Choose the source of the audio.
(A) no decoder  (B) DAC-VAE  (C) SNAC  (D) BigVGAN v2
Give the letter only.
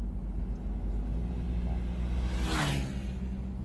A